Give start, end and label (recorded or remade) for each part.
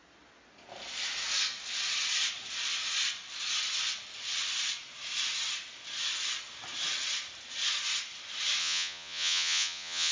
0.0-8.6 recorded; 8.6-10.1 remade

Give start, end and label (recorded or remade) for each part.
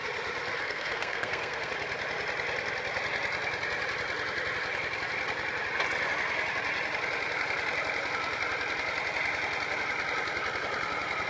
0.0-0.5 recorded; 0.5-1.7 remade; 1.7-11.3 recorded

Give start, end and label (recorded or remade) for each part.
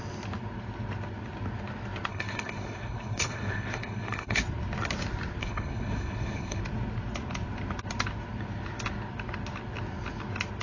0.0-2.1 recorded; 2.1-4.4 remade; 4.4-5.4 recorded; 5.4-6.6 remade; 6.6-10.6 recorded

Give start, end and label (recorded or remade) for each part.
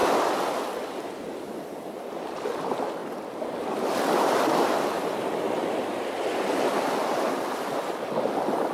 0.0-0.5 remade; 0.5-3.0 recorded; 3.0-6.5 remade; 6.5-8.7 recorded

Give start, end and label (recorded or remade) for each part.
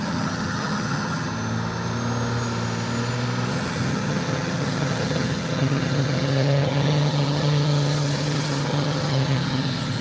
0.0-1.3 remade; 1.3-3.5 recorded; 3.5-10.0 remade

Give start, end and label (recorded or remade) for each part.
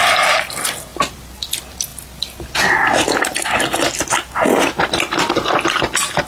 0.0-6.3 recorded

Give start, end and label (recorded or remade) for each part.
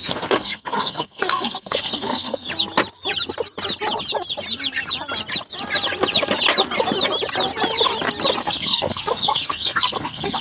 0.0-2.5 remade; 2.5-8.4 recorded; 8.4-10.4 remade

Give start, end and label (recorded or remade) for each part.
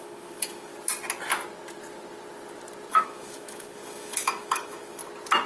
0.0-0.7 remade; 0.7-2.9 recorded; 2.9-5.0 remade; 5.0-5.5 recorded